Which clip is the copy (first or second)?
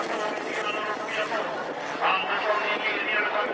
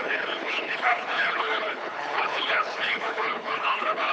second